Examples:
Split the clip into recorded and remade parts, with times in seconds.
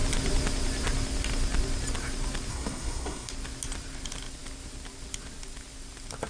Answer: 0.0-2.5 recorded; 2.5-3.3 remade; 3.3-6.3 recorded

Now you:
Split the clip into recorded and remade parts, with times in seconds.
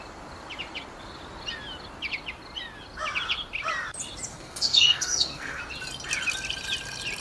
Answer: 0.0-4.3 recorded; 4.3-5.6 remade; 5.6-7.2 recorded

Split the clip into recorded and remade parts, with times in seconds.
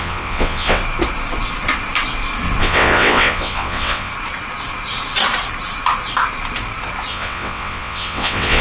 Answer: 0.0-0.8 remade; 0.8-2.6 recorded; 2.6-4.1 remade; 4.1-7.1 recorded; 7.1-8.6 remade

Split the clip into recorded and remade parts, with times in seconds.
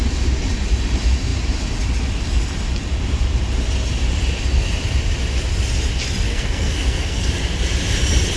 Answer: 0.0-6.3 recorded; 6.3-7.3 remade; 7.3-8.4 recorded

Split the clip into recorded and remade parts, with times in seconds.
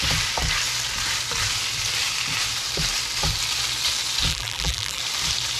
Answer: 0.0-4.3 recorded; 4.3-5.0 remade; 5.0-5.6 recorded